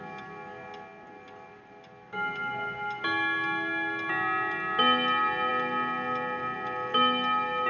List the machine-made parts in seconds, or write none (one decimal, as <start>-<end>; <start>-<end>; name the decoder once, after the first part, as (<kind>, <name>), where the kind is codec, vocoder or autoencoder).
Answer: none